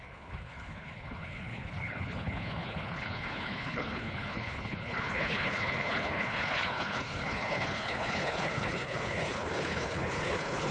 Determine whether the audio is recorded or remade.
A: remade